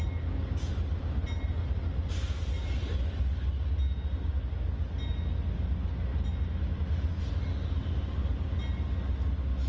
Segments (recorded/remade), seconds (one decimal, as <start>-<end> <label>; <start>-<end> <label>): 0.0-9.7 recorded